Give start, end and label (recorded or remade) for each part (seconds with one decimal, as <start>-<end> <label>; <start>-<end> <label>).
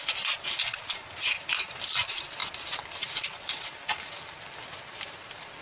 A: 0.0-5.6 recorded